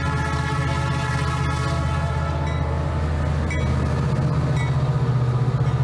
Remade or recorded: recorded